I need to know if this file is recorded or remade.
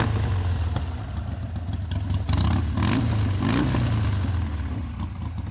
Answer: recorded